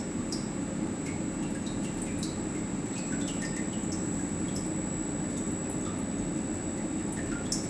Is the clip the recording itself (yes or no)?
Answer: yes